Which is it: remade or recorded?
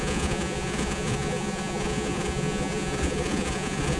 remade